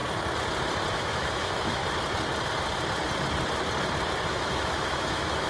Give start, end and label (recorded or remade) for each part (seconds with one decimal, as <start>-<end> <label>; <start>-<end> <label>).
0.0-0.9 recorded; 0.9-1.8 remade; 1.8-4.3 recorded; 4.3-5.5 remade